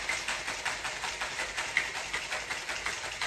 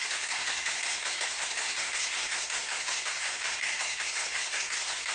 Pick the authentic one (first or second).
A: first